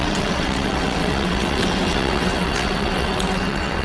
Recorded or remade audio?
remade